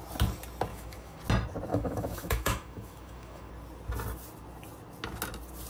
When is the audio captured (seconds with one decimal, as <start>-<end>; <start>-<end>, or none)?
0.0-0.7; 1.2-1.7; 3.5-5.7

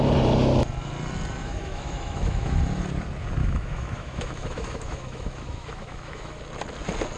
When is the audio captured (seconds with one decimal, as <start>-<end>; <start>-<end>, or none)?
0.0-1.4; 2.6-3.4; 6.4-7.2

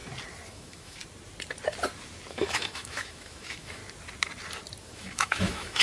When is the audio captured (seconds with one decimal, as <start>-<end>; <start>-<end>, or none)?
0.0-0.5; 1.0-2.3; 3.8-4.8